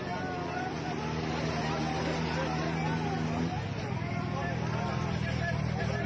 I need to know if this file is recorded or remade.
recorded